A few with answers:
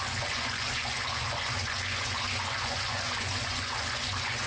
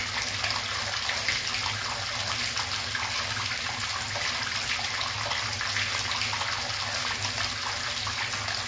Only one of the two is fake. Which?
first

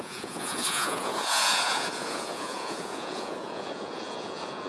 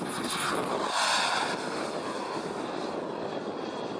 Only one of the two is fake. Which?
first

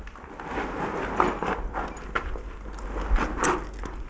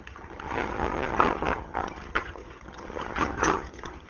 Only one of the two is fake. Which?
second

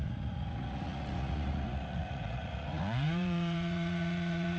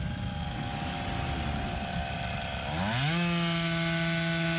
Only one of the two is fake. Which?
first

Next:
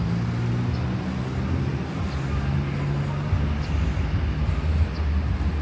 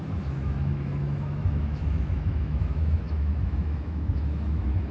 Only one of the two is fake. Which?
second